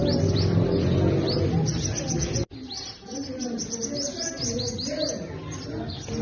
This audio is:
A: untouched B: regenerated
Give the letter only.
A